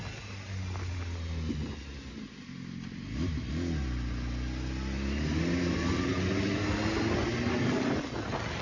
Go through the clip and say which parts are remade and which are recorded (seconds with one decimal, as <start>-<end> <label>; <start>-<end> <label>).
0.0-8.6 recorded